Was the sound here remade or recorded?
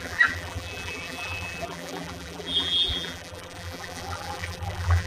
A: remade